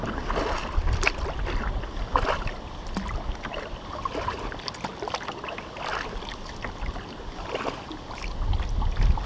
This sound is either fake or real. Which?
real